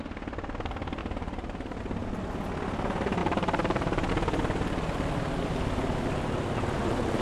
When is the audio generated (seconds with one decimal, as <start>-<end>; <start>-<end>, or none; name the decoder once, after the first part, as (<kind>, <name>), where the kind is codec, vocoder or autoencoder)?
1.0-1.8 (vocoder, BigVGAN v2); 3.2-4.1